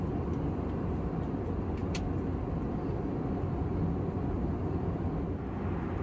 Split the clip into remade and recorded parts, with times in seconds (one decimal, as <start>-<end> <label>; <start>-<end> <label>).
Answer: 0.0-6.0 recorded